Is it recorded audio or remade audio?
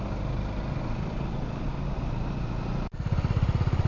recorded